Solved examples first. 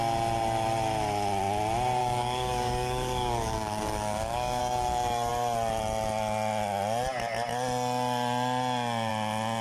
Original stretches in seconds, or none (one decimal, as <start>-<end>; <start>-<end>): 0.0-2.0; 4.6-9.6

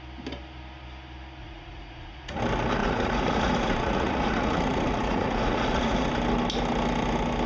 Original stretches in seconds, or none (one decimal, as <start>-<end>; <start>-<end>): 0.0-1.4; 2.4-2.8; 6.1-7.5

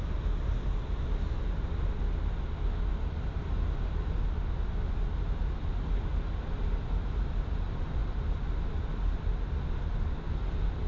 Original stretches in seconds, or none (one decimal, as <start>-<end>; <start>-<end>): 0.0-10.9

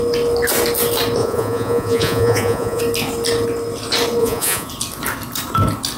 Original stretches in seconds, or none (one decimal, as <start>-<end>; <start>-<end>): 0.0-1.2; 2.8-4.2; 4.7-6.0

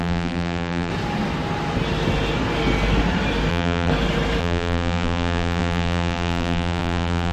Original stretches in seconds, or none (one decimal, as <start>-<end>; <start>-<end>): 0.9-3.5; 3.9-4.4

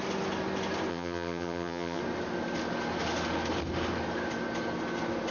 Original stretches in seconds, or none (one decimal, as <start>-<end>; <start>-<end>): 0.0-0.9; 2.0-5.3

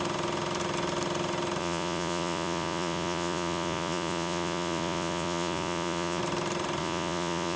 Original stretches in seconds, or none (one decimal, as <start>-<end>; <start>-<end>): 0.0-1.6; 6.2-6.8